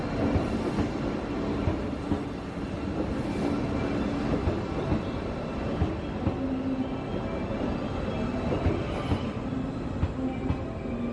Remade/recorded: recorded